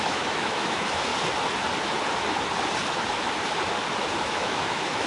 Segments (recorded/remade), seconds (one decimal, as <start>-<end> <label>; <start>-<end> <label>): 0.0-1.1 remade; 1.1-4.2 recorded; 4.2-5.1 remade